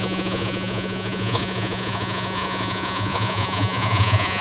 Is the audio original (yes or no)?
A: no